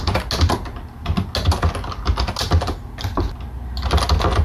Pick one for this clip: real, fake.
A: real